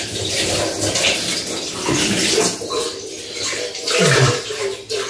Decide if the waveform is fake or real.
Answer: real